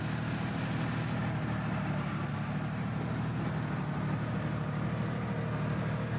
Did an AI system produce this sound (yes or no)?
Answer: no